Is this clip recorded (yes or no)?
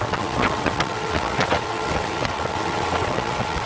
no